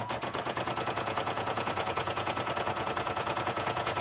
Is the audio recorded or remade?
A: remade